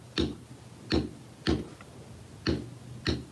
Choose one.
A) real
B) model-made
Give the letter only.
A